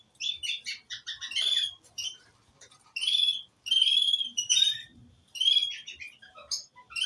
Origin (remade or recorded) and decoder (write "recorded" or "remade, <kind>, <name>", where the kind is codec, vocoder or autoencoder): remade, vocoder, BigVGAN v2